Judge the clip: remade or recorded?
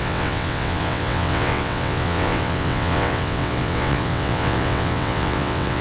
remade